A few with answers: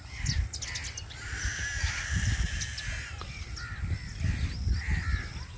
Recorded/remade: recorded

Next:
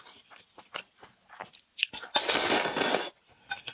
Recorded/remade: recorded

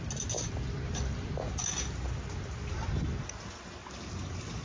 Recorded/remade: recorded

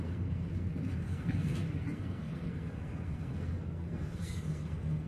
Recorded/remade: remade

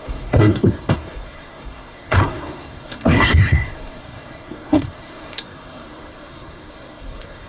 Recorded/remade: remade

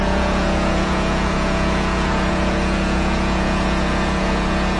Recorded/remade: remade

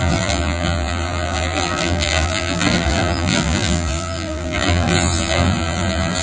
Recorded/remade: remade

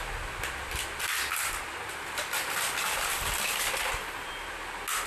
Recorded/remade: recorded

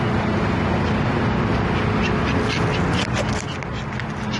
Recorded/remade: recorded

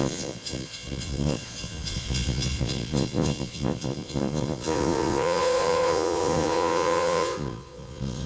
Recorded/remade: remade